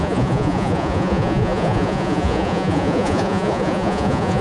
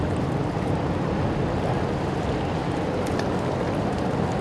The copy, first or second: first